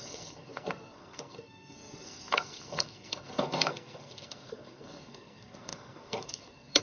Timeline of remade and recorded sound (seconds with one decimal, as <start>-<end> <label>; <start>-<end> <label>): 0.0-6.8 remade